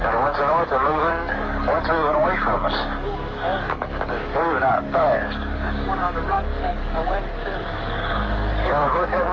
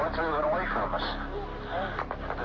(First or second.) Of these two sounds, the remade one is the first